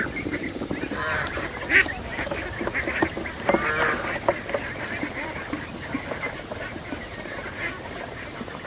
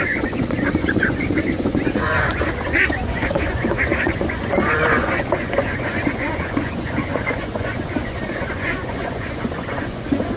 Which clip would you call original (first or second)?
first